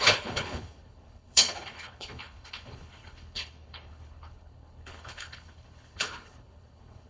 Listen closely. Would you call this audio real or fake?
fake